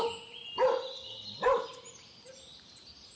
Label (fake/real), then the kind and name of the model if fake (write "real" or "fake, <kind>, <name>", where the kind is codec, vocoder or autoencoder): real